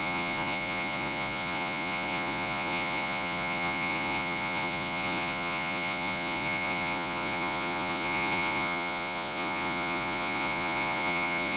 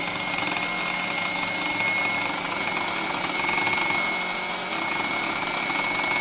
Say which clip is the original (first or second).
second